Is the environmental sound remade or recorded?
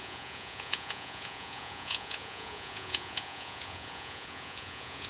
remade